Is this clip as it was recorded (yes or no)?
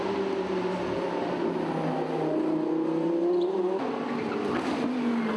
yes